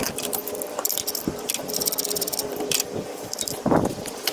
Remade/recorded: remade